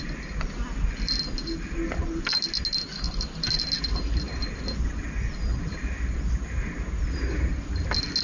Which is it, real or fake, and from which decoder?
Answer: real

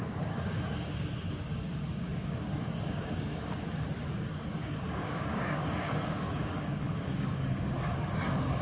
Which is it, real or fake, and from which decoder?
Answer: fake, codec, DAC